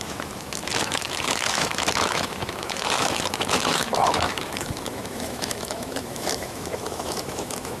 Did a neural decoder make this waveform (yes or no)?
yes